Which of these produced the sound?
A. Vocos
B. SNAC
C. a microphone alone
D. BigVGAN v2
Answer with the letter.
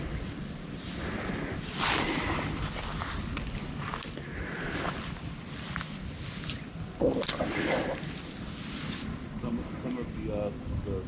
C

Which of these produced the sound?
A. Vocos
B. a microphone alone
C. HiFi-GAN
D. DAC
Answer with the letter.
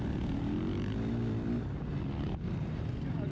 B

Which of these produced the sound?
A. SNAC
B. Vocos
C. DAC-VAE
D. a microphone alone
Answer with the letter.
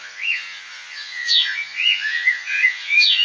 B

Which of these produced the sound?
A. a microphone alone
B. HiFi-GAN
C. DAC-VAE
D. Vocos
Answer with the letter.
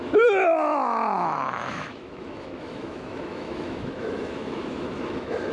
C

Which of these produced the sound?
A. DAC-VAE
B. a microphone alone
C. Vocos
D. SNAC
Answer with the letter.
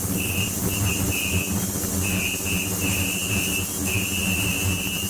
B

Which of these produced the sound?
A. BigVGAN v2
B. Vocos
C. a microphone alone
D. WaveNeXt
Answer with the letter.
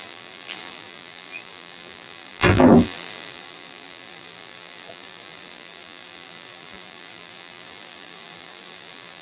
A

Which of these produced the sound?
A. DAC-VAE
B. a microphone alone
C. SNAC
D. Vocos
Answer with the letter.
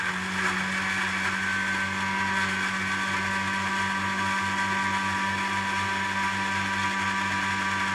B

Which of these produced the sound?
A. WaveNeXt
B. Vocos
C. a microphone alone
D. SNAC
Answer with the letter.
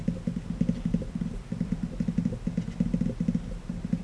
C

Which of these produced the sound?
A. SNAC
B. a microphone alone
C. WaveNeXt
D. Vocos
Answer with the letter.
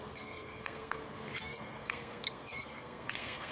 A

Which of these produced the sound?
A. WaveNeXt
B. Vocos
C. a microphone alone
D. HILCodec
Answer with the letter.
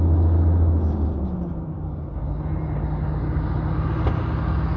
C